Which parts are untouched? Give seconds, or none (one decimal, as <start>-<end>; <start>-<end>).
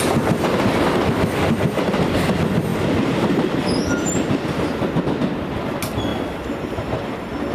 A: 0.0-7.5